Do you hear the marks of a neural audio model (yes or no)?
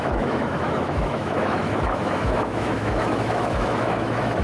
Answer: yes